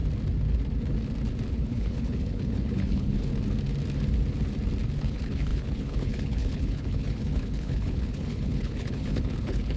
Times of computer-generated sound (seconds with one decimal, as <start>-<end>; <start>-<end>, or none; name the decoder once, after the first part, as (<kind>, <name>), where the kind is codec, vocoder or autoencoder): 1.5-3.3 (codec, HILCodec); 5.0-9.8